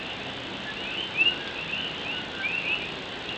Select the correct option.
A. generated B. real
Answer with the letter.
B